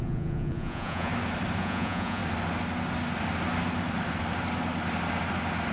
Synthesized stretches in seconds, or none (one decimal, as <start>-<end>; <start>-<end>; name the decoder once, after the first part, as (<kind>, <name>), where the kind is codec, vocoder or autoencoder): 0.0-1.1 (vocoder, Vocos); 1.6-2.2